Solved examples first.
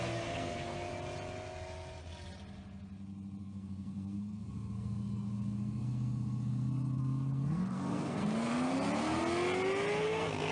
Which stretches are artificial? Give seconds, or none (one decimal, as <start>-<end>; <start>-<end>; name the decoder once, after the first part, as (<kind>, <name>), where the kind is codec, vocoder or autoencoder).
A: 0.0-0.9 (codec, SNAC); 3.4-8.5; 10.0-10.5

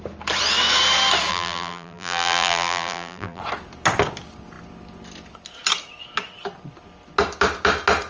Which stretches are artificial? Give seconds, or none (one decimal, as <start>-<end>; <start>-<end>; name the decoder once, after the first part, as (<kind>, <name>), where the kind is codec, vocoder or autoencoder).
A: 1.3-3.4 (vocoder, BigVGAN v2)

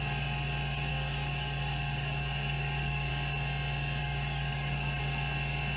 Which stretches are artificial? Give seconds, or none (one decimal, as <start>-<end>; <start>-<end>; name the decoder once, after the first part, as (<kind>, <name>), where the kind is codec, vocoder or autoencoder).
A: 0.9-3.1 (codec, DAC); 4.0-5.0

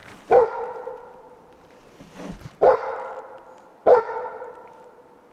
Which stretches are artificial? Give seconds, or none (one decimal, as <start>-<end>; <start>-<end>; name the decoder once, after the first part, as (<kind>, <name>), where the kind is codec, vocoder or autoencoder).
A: 0.0-3.2 (vocoder, BigVGAN v2); 3.8-5.3

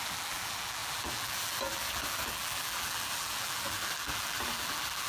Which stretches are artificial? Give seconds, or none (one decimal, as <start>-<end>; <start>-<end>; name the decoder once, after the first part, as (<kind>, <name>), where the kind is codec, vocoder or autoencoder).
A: 0.0-5.1 (vocoder, BigVGAN v2)

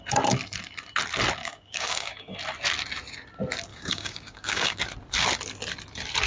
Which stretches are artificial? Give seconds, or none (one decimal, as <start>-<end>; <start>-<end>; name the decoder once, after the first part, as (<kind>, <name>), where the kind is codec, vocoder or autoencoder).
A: 1.4-2.3 (codec, DAC); 3.7-4.8

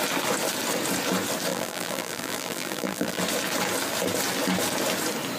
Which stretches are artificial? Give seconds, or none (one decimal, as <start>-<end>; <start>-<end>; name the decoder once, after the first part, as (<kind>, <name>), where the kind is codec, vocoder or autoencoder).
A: 1.5-3.2 (vocoder, BigVGAN v2)